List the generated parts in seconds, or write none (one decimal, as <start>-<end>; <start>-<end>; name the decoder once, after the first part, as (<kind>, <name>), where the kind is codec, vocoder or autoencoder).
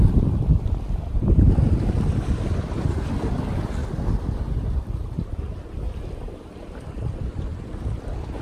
0.0-3.8 (vocoder, BigVGAN v2); 7.2-8.4